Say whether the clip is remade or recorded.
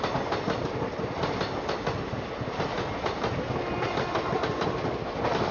recorded